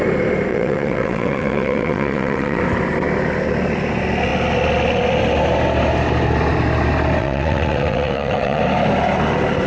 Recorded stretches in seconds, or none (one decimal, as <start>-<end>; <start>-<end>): 0.0-0.5; 2.6-7.2; 8.6-9.7